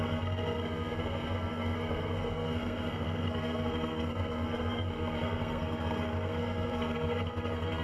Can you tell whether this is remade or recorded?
remade